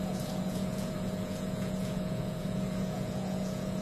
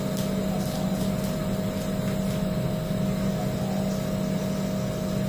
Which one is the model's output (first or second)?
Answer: first